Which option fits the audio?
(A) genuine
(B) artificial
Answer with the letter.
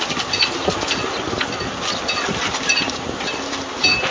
A